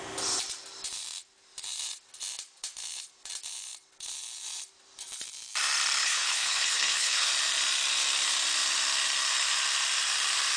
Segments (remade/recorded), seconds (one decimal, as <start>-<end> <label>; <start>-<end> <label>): 0.0-6.0 recorded; 6.0-7.3 remade; 7.3-10.6 recorded